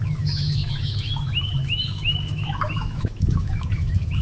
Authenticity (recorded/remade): remade